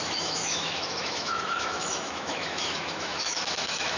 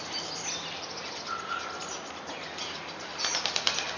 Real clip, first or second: second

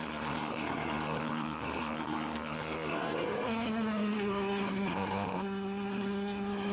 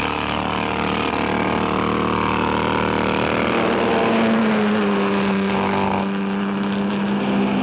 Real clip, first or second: second